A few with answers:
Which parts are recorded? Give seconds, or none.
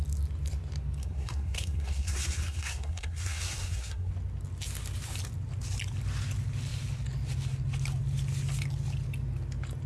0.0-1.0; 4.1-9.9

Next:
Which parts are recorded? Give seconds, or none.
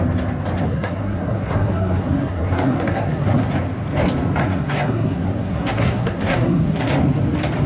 0.0-0.6; 3.5-4.4; 6.9-7.7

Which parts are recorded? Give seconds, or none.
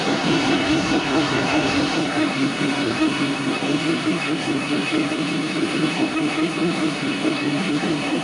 none